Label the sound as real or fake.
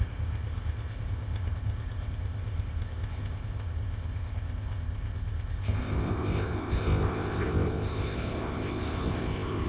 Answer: fake